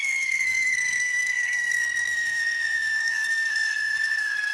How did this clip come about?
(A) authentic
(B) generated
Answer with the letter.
B